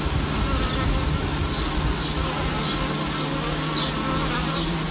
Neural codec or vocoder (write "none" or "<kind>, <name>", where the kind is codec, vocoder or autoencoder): none